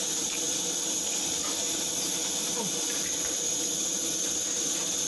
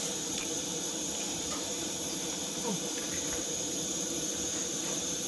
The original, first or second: first